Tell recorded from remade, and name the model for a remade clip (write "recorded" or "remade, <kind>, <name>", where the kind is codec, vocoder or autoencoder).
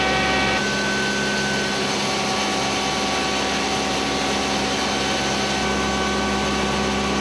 recorded